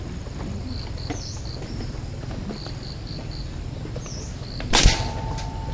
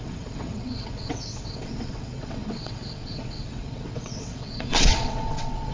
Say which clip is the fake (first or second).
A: second